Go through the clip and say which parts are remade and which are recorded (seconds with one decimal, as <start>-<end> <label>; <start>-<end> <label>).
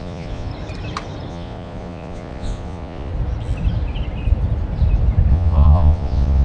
0.0-0.5 remade; 0.5-1.3 recorded; 1.3-3.1 remade; 3.1-5.3 recorded; 5.3-6.4 remade